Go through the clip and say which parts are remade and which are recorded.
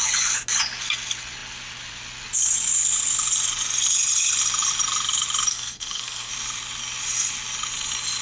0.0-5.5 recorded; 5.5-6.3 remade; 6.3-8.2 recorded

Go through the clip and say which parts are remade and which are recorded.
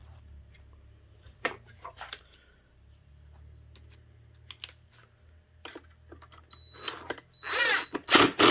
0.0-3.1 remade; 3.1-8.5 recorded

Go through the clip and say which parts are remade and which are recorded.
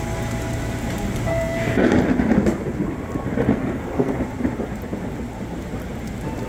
0.0-1.3 recorded; 1.3-1.9 remade; 1.9-3.5 recorded; 3.5-4.1 remade; 4.1-6.5 recorded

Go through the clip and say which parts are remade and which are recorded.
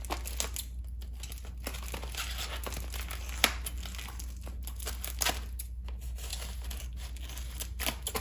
0.0-8.2 recorded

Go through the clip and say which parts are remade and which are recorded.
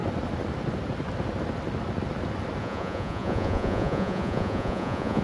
0.0-2.6 recorded; 2.6-5.2 remade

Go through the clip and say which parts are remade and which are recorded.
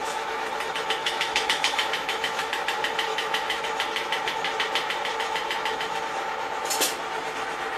0.0-0.5 remade; 0.5-1.0 recorded; 1.0-2.5 remade; 2.5-3.1 recorded; 3.1-3.6 remade; 3.6-7.8 recorded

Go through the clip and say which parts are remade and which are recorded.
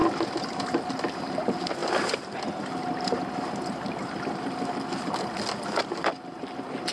0.0-6.9 recorded